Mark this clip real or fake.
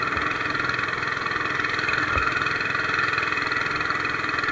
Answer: real